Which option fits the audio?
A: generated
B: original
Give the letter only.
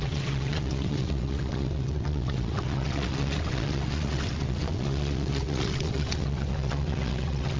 A